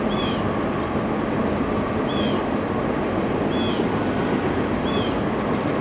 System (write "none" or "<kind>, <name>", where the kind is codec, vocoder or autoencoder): none